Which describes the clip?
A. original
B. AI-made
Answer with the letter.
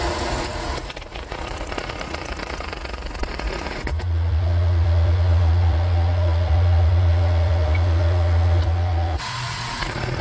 B